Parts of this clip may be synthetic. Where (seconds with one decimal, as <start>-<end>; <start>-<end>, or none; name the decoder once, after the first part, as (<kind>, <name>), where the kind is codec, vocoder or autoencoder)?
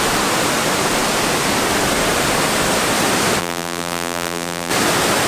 3.4-4.7 (vocoder, BigVGAN v2)